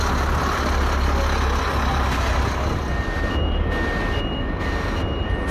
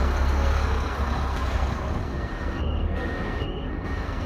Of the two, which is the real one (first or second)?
first